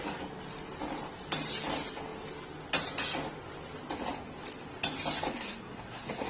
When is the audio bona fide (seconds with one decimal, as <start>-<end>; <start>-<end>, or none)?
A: 0.0-5.3